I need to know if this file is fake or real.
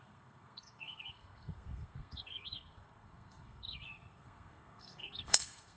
fake